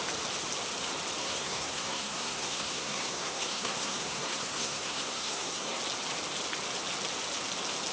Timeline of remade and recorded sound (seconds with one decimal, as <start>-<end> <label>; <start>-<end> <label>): 0.0-1.2 recorded; 1.2-5.8 remade; 5.8-7.9 recorded